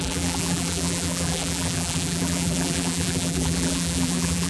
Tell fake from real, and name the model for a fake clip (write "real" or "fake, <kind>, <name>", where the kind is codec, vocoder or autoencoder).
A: fake, vocoder, BigVGAN v2